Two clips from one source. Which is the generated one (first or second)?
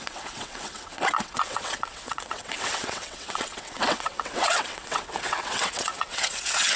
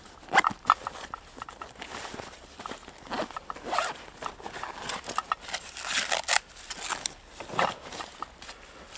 first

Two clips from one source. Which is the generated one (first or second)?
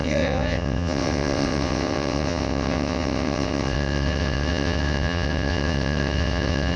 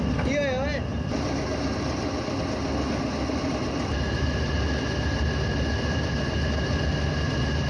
first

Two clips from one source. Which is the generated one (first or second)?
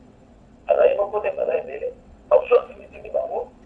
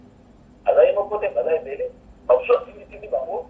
first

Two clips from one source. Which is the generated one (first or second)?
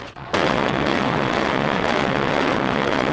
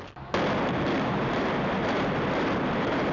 first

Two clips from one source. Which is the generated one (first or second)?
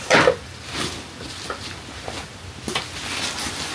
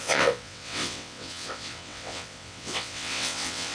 second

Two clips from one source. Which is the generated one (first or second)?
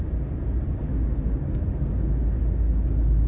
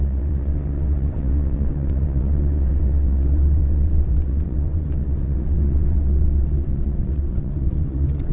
second